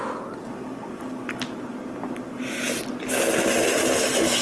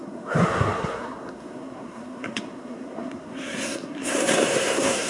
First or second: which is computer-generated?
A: second